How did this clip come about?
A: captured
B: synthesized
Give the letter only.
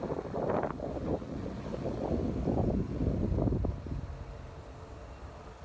A